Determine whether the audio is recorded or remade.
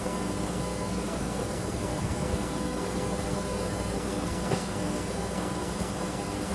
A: remade